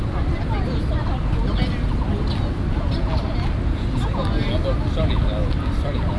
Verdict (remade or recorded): recorded